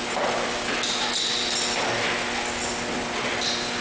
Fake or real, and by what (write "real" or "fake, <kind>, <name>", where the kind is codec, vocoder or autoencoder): real